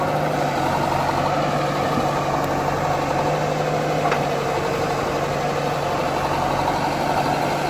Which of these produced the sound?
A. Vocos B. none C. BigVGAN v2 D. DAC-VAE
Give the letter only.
B